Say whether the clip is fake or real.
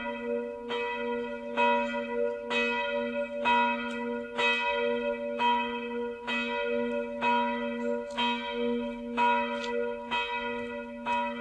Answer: real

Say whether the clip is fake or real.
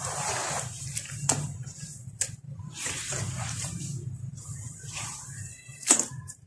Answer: fake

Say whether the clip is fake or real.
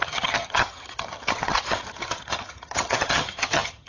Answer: fake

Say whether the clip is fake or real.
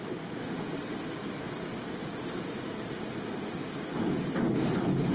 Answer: real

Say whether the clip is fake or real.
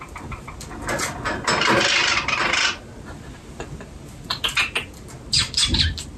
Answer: real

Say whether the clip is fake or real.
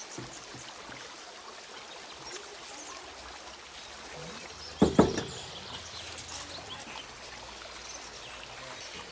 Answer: real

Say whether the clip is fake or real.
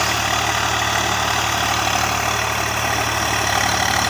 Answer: real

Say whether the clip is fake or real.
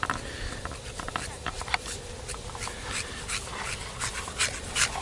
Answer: real